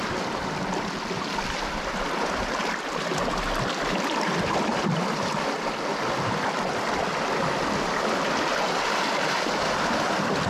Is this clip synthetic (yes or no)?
no